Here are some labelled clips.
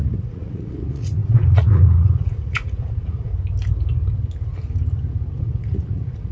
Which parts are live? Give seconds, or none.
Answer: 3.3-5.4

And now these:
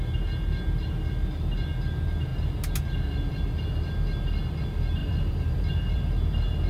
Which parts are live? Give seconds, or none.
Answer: 0.0-5.0; 6.0-6.7